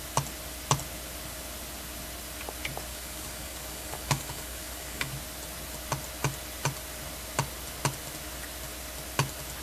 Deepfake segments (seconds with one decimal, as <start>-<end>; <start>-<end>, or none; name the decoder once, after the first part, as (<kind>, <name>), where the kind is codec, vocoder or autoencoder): 2.9-5.1 (codec, DAC)